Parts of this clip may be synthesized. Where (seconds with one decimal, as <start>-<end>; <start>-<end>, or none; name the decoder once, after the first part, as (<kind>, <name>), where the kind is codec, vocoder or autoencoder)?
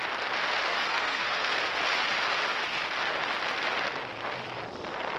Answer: 0.7-1.5 (codec, SNAC)